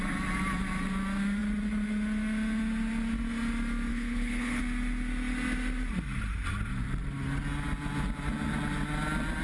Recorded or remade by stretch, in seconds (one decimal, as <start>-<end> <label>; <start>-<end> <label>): 0.0-3.9 recorded; 3.9-4.6 remade; 4.6-9.4 recorded